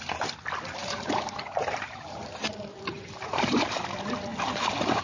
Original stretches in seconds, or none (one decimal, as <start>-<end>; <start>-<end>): 0.0-0.8; 3.8-4.3